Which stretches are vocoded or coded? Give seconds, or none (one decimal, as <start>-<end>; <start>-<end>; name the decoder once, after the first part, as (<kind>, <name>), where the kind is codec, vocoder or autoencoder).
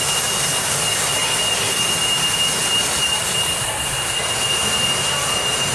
1.2-2.1 (vocoder, BigVGAN v2); 2.6-3.9